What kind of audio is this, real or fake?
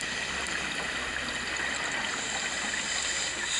real